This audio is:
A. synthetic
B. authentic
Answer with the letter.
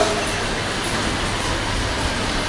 B